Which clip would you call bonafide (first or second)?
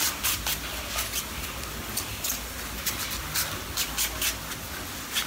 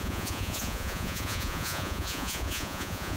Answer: first